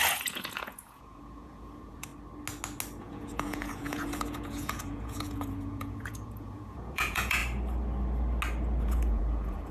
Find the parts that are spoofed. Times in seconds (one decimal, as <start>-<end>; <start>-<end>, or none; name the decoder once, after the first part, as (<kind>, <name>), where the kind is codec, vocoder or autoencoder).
0.0-2.1 (vocoder, Vocos); 3.0-7.4; 8.8-9.7